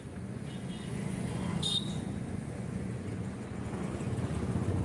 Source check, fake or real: fake